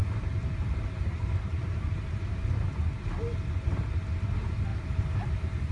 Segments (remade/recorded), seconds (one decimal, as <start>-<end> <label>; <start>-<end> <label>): 0.0-2.7 remade; 2.7-4.7 recorded; 4.7-5.7 remade